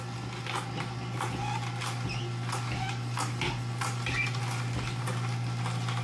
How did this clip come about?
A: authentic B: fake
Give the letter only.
A